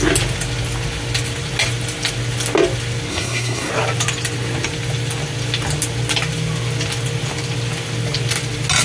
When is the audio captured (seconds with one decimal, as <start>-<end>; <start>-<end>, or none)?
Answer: 0.0-3.1; 3.7-8.8